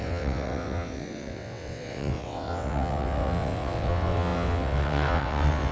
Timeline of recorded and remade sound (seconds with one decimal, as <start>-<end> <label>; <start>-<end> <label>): 0.0-5.7 remade